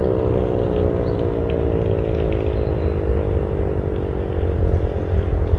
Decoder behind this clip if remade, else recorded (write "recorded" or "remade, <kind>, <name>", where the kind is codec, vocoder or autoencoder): recorded